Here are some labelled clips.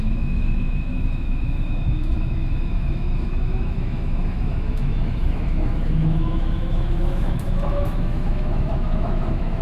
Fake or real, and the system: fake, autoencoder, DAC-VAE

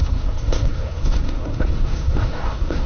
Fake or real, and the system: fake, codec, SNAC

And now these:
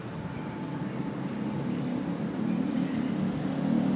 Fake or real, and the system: real